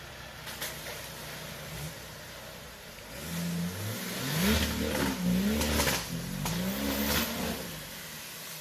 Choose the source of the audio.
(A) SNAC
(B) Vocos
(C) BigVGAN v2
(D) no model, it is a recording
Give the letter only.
D